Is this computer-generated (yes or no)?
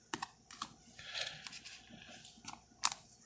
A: no